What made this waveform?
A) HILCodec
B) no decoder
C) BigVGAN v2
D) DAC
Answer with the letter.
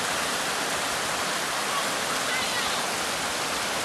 B